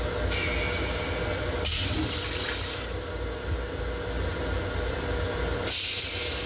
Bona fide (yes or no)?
yes